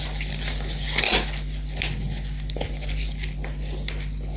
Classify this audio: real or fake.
real